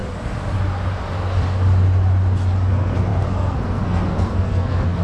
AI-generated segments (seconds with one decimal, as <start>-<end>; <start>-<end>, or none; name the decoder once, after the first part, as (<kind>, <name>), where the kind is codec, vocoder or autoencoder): 2.7-5.0 (codec, SNAC)